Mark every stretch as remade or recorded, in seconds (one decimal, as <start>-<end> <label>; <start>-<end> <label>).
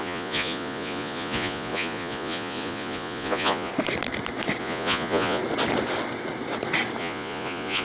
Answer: 0.0-3.7 remade; 3.7-4.6 recorded; 4.6-5.4 remade; 5.4-7.0 recorded; 7.0-7.8 remade